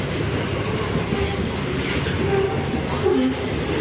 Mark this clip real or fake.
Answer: real